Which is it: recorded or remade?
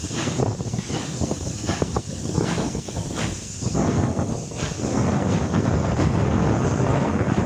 remade